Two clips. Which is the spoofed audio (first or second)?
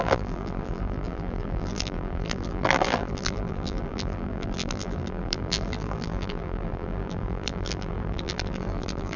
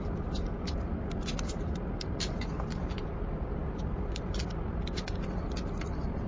first